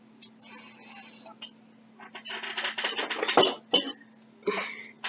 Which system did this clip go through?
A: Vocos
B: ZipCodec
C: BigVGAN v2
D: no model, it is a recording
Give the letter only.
D